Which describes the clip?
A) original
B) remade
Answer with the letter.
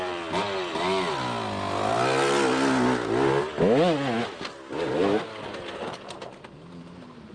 A